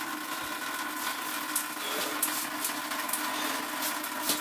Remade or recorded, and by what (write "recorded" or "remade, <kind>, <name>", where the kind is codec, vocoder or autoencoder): recorded